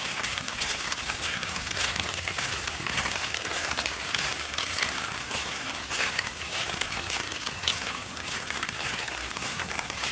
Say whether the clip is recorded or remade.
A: remade